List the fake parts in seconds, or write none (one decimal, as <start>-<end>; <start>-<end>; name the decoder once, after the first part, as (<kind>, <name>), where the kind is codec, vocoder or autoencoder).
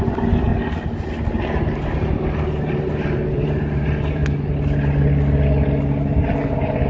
0.0-0.5 (vocoder, BigVGAN v2); 2.6-4.2; 6.0-6.9